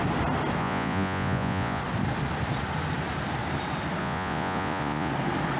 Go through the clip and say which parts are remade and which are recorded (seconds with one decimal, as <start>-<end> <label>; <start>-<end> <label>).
0.0-0.6 recorded; 0.6-1.8 remade; 1.8-4.0 recorded; 4.0-5.1 remade; 5.1-5.6 recorded